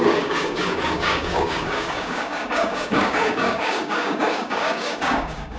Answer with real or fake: fake